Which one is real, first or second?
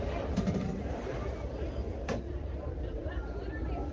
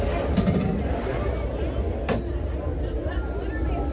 second